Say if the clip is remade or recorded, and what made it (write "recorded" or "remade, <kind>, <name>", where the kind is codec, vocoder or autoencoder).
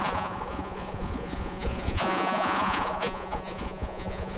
remade, vocoder, Vocos